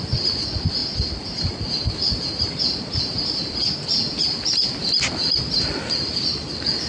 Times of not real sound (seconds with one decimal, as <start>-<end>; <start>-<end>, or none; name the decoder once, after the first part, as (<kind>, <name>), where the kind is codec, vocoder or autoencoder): none